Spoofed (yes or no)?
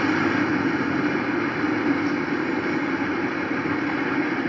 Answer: no